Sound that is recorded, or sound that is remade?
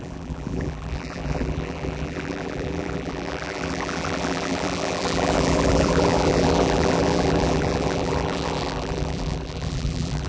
remade